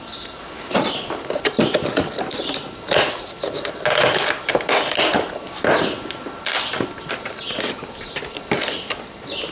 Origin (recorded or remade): recorded